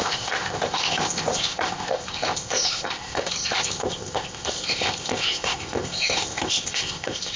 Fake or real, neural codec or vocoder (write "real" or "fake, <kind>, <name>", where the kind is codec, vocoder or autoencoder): fake, codec, ZipCodec